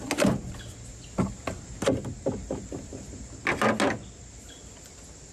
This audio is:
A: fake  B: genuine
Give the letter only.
B